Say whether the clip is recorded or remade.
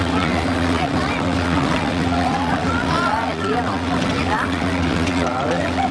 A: remade